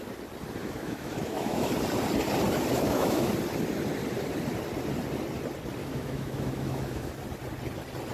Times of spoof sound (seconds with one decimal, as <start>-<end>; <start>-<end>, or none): 0.6-1.7; 2.7-3.3; 5.8-7.1